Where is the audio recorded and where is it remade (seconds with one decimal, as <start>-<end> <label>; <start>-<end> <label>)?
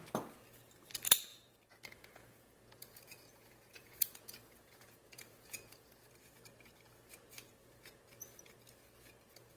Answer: 0.0-1.3 recorded; 1.3-6.1 remade; 6.1-9.6 recorded